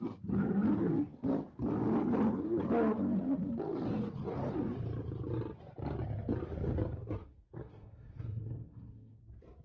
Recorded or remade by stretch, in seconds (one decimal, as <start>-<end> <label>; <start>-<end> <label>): 0.0-7.2 recorded; 7.2-9.2 remade; 9.2-9.6 recorded